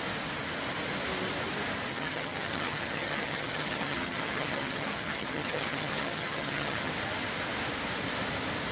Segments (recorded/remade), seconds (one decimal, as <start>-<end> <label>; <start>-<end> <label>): 0.0-1.9 recorded; 1.9-6.9 remade; 6.9-8.7 recorded